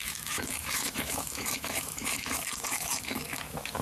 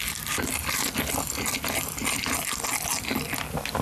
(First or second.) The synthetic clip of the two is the first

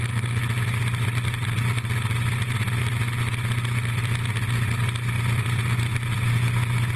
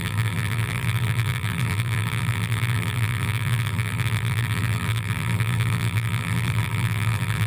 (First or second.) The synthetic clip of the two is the second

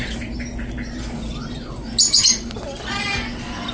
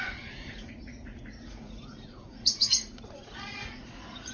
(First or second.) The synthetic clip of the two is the second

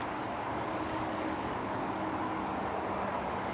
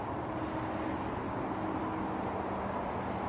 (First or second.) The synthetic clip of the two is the first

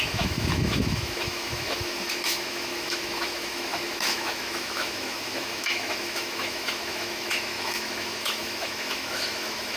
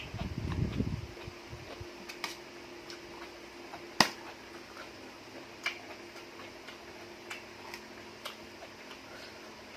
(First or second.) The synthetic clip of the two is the first